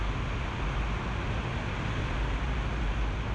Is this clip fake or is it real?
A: real